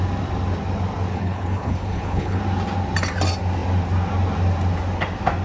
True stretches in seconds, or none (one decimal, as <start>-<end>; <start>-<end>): 0.0-1.1; 2.4-5.4